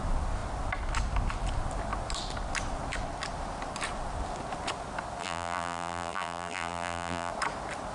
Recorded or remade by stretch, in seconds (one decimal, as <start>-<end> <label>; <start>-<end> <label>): 0.0-5.2 recorded; 5.2-7.3 remade; 7.3-7.9 recorded